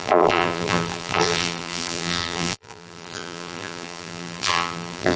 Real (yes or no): no